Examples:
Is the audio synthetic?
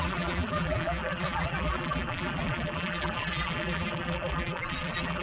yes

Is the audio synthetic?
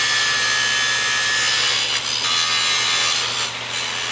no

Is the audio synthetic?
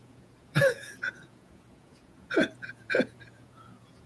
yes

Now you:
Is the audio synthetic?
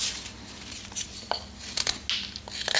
no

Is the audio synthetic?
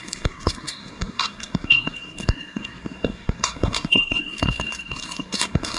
yes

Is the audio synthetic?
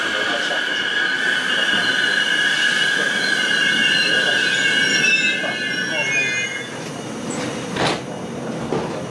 no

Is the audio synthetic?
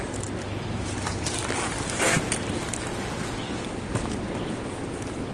no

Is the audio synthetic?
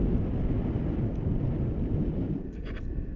no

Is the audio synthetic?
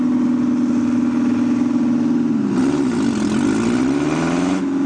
no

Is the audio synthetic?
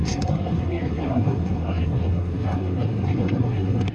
yes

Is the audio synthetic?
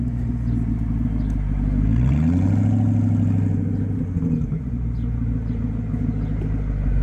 no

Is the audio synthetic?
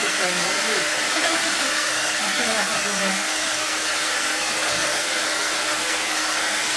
yes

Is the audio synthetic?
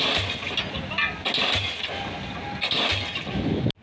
no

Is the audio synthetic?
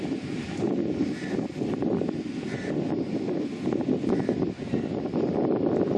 no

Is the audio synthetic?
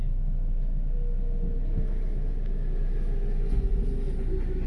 no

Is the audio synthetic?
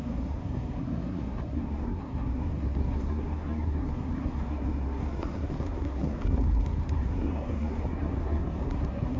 yes